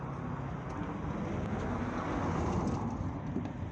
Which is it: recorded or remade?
recorded